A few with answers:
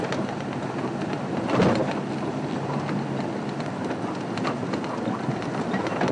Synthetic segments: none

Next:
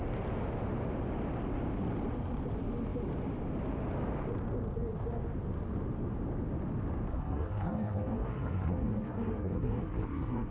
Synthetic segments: 7.1-10.5 (codec, SNAC)

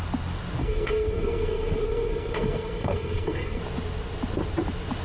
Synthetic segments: 0.6-3.6 (codec, SNAC)

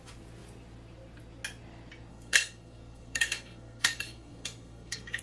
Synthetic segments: 2.1-5.2 (codec, SNAC)

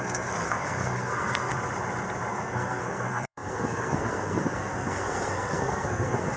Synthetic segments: 0.0-1.5 (codec, SNAC); 2.3-6.4

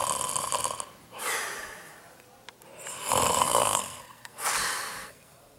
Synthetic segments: 3.4-5.6 (codec, SNAC)

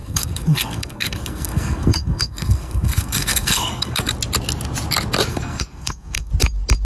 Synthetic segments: 0.0-4.1 (codec, SNAC); 5.3-6.3

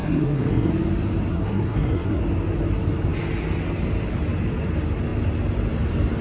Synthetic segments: 0.0-0.7 (codec, SNAC); 1.3-2.2